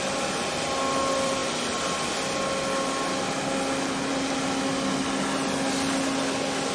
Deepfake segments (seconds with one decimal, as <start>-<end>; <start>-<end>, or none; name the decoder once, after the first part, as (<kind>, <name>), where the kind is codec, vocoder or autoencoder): none